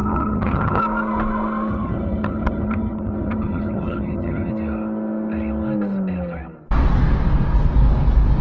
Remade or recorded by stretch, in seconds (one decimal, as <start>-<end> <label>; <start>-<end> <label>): 0.0-0.8 remade; 0.8-1.7 recorded; 1.7-4.5 remade; 4.5-8.4 recorded